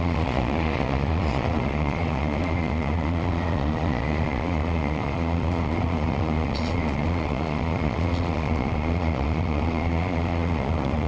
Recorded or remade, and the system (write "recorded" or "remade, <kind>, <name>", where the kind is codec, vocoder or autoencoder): remade, vocoder, Vocos